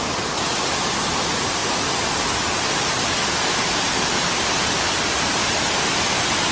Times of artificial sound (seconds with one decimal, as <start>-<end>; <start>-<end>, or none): 0.0-0.5; 1.0-6.5